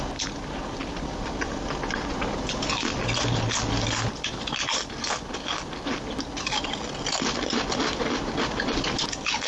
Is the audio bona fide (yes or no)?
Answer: yes